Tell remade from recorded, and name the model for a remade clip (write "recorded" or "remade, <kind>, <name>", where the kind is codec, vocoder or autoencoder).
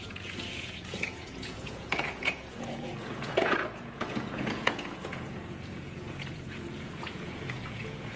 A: remade, vocoder, Vocos